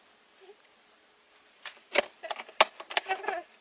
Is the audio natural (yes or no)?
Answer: yes